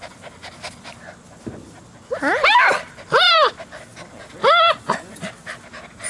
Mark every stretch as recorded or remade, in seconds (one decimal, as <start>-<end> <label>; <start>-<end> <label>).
0.0-6.1 recorded